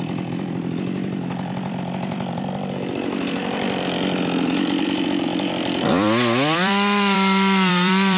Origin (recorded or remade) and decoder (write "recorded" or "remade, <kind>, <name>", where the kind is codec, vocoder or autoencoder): remade, vocoder, BigVGAN v2